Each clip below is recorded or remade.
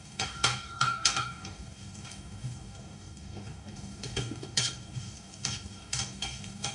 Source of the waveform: remade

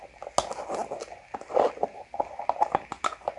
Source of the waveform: recorded